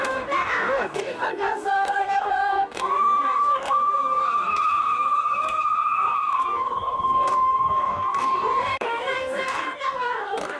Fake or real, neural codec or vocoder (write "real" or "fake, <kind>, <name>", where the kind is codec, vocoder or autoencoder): fake, codec, DAC